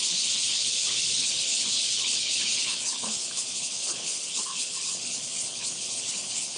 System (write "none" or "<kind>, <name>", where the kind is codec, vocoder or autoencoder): codec, HILCodec